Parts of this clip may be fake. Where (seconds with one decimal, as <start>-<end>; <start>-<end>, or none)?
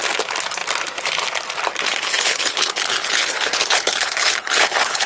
1.9-5.1